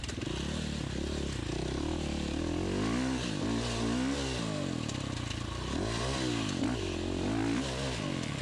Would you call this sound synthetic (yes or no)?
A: no